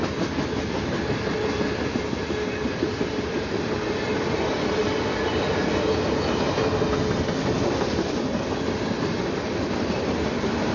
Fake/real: real